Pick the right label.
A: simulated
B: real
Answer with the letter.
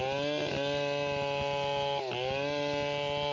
B